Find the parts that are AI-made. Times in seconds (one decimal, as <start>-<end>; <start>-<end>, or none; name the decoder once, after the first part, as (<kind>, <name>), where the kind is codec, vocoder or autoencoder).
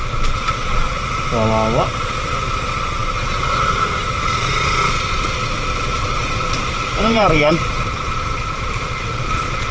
5.9-9.7 (vocoder, BigVGAN v2)